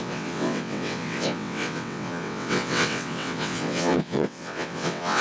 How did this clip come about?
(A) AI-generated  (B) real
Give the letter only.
A